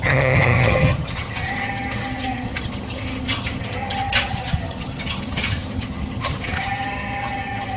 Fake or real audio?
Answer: fake